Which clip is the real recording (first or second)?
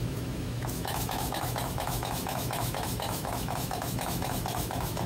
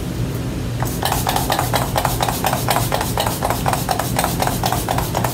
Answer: second